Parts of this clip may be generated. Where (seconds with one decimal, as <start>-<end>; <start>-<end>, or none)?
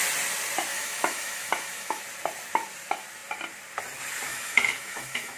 0.7-2.0; 4.3-5.4